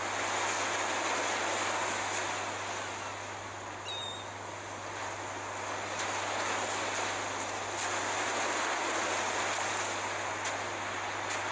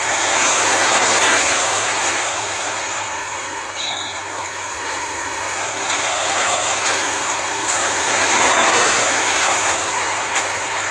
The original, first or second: first